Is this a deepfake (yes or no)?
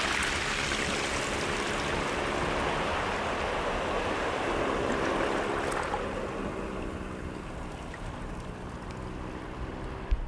no